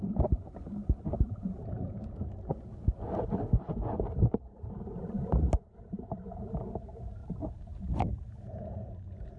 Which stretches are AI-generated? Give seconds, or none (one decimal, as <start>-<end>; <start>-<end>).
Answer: 0.0-2.0; 3.9-9.4